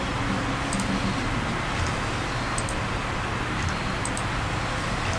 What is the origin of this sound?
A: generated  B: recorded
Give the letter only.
B